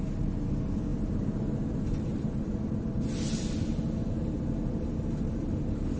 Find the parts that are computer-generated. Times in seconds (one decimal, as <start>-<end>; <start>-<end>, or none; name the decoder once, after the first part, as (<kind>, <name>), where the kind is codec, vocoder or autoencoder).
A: 0.9-1.9 (vocoder, BigVGAN v2)